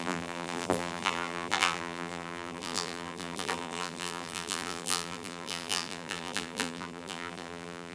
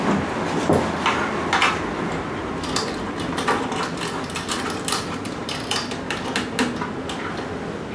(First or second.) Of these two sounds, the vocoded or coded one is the first